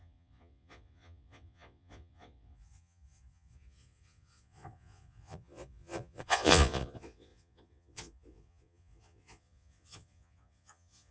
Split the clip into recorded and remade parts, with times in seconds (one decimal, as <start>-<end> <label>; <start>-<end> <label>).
0.0-11.1 remade